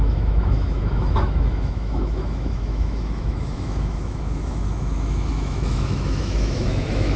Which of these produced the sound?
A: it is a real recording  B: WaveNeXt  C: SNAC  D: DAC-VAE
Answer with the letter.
D